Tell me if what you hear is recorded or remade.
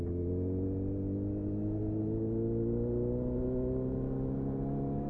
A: recorded